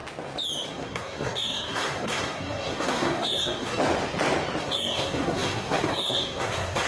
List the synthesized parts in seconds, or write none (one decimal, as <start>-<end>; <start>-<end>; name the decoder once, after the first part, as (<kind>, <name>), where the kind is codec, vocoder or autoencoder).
0.7-3.7 (codec, SNAC); 4.6-6.9